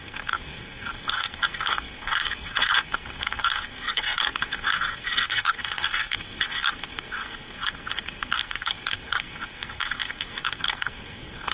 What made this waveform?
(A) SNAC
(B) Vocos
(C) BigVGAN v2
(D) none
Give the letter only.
A